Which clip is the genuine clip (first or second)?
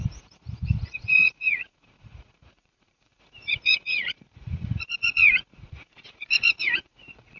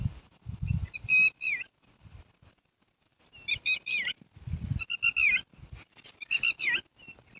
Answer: second